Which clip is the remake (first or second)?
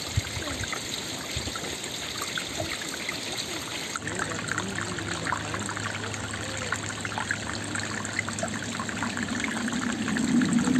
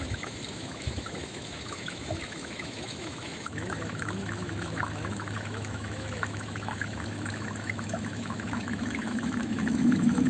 second